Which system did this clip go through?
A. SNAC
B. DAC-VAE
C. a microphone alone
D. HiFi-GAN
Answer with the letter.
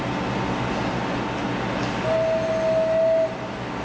C